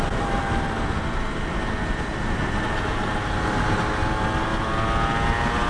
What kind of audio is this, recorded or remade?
recorded